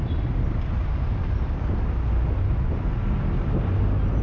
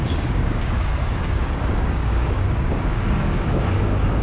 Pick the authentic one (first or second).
first